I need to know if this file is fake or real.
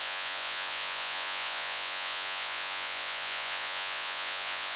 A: fake